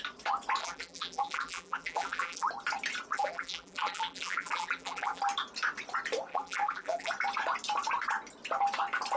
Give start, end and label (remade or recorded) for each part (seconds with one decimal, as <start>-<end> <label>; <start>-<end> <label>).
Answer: 0.0-0.6 recorded; 0.6-2.5 remade; 2.5-3.1 recorded; 3.1-5.2 remade; 5.2-6.3 recorded; 6.3-7.1 remade; 7.1-9.2 recorded